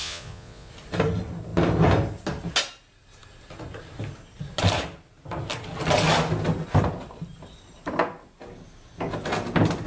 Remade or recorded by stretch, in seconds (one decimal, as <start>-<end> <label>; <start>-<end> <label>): 0.0-0.7 remade; 0.7-9.9 recorded